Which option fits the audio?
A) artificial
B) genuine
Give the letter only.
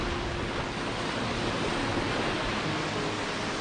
B